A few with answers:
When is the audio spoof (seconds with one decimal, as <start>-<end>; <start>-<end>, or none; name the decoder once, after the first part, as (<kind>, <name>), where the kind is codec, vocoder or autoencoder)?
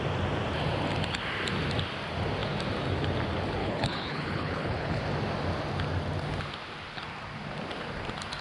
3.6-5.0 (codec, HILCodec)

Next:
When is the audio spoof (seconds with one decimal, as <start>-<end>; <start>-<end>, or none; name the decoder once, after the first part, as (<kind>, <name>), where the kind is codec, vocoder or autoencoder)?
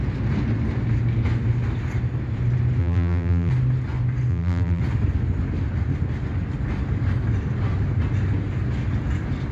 2.8-3.5 (vocoder, BigVGAN v2); 4.3-4.8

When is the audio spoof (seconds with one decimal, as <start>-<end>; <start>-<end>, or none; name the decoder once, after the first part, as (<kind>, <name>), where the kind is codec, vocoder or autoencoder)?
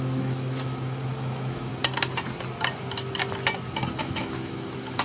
0.0-1.7 (autoencoder, DAC-VAE); 4.0-5.0